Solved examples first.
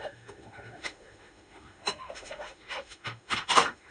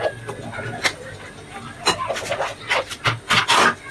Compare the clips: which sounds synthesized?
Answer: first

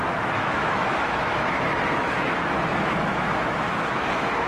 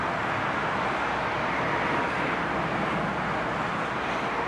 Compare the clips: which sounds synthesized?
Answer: first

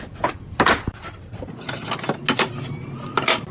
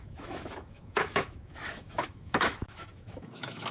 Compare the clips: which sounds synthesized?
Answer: second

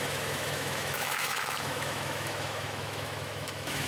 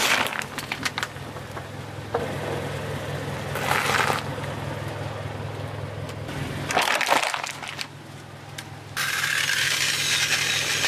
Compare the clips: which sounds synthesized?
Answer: first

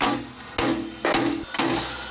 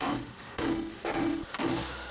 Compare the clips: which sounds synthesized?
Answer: second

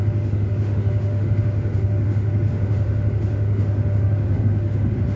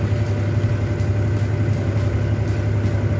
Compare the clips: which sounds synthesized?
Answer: first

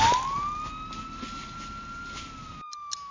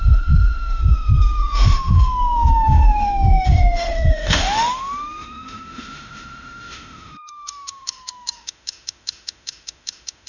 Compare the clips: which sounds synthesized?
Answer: second